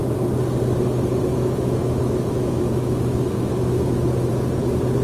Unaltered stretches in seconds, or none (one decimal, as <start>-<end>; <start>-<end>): 0.0-1.3; 4.3-5.0